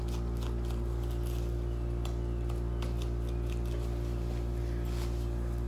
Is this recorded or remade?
recorded